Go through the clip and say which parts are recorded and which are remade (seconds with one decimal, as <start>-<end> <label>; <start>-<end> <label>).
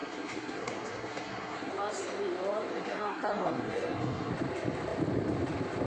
0.0-1.7 remade; 1.7-2.7 recorded; 2.7-4.3 remade; 4.3-5.9 recorded